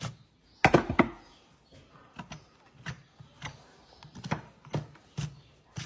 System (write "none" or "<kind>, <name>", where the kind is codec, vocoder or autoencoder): none